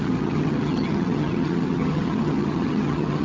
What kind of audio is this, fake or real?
fake